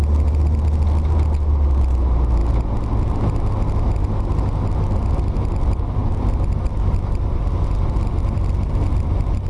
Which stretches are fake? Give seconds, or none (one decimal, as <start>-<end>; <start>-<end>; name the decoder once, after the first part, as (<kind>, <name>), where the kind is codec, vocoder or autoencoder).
none